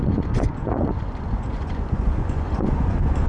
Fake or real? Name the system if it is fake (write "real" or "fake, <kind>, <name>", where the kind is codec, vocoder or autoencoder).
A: fake, vocoder, Vocos